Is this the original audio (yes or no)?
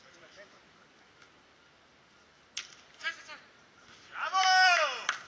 yes